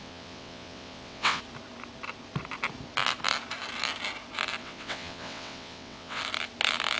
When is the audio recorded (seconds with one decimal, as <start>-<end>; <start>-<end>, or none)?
1.4-4.6; 6.2-7.0

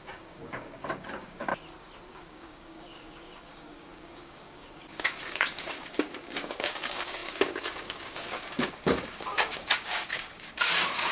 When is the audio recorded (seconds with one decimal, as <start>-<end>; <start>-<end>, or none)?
1.5-2.1

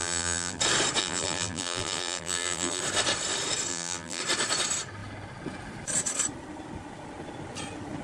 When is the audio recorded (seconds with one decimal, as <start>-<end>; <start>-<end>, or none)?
0.6-1.0; 2.8-3.7; 4.2-8.0

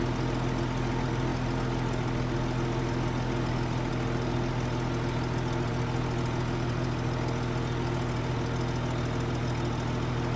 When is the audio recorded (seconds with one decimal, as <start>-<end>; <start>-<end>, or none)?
0.0-10.4

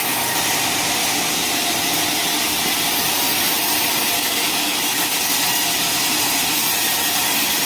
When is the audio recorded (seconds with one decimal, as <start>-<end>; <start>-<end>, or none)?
0.0-4.2; 5.3-7.7

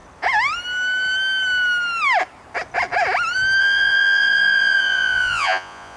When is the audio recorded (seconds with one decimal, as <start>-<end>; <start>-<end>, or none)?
0.0-3.6